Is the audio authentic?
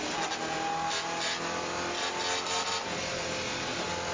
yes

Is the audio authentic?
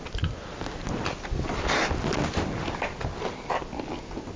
yes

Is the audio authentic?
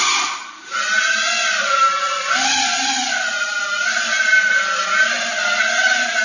yes